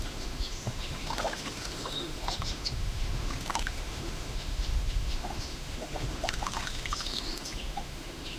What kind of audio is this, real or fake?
fake